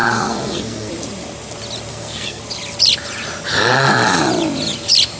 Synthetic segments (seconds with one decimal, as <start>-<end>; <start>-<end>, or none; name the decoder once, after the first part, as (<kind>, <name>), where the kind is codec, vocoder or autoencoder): 0.0-0.9 (codec, SNAC); 1.9-2.4